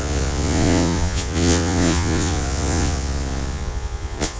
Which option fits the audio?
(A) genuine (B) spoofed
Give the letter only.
B